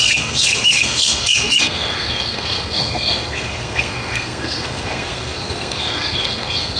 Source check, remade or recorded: remade